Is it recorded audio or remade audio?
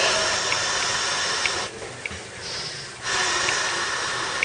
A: recorded